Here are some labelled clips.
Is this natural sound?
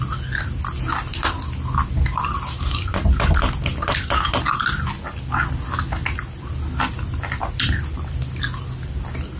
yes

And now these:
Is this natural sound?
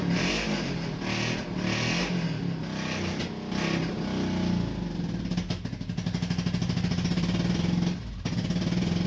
yes